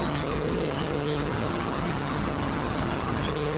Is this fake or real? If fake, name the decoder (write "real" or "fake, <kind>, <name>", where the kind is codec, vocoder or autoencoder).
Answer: fake, vocoder, HiFi-GAN